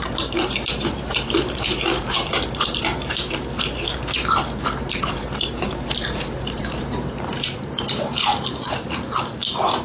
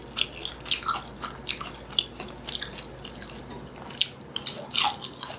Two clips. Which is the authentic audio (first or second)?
second